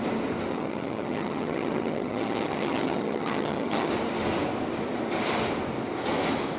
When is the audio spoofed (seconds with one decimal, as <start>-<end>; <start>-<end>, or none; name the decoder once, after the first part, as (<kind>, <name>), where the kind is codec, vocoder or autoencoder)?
0.5-3.9 (vocoder, HiFi-GAN)